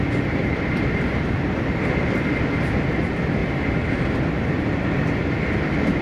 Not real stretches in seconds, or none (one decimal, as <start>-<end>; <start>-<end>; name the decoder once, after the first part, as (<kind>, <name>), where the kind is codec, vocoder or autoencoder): 0.4-1.7 (vocoder, BigVGAN v2); 3.4-4.7